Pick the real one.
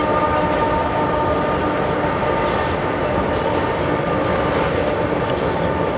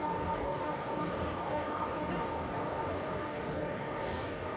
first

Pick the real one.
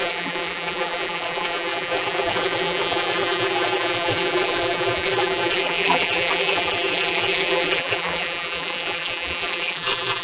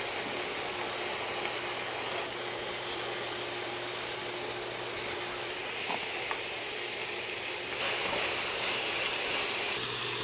second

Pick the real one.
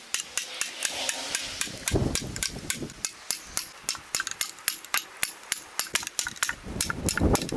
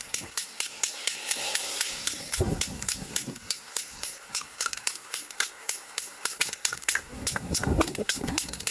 first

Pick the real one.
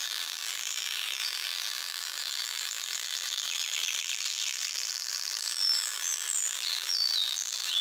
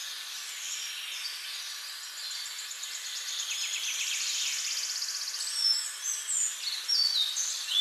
second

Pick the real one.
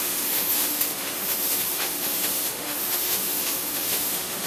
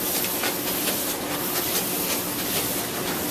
second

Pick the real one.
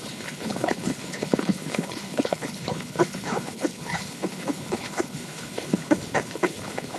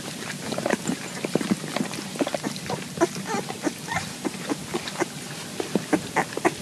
second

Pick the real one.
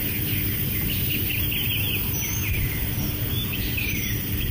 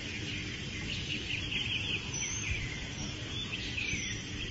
first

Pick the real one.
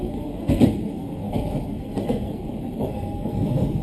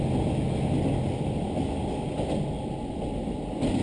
second